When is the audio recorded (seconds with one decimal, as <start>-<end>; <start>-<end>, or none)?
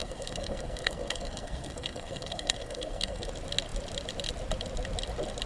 3.3-5.5